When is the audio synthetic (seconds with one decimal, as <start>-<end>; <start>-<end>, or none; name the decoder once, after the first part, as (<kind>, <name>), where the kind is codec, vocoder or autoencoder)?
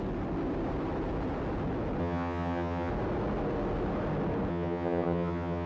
2.0-2.9 (vocoder, HiFi-GAN); 4.5-5.7